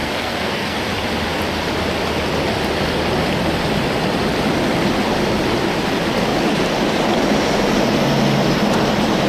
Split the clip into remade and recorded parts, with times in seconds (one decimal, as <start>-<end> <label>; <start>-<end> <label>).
0.0-0.8 remade; 0.8-9.3 recorded